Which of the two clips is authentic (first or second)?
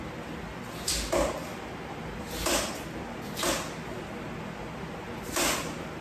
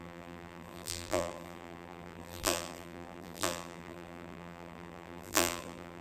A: first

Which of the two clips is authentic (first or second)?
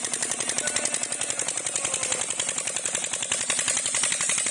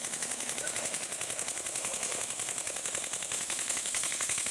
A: first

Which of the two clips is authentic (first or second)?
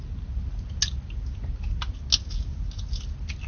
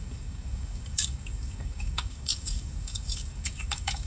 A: first